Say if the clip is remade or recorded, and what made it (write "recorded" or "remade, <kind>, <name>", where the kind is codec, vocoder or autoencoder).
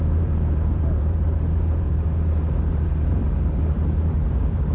remade, vocoder, BigVGAN v2